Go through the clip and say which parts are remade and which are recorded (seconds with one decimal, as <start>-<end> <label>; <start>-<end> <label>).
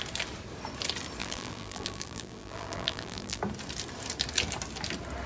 0.0-1.2 recorded; 1.2-3.4 remade; 3.4-5.3 recorded